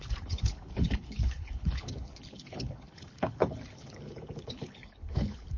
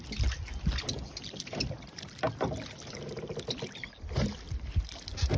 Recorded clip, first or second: second